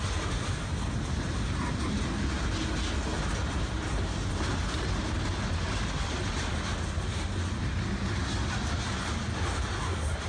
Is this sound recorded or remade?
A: recorded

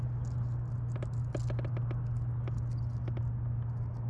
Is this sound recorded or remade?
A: recorded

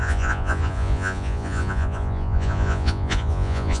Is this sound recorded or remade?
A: remade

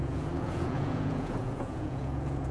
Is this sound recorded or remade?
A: remade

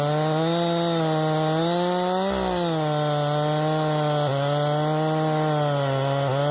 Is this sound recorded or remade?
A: recorded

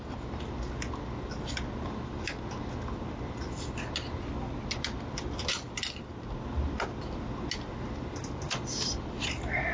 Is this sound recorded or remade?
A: recorded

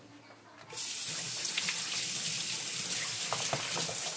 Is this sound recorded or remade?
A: recorded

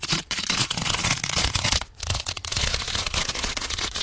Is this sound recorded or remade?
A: remade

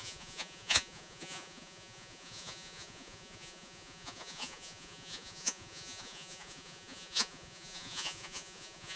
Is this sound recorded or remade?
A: remade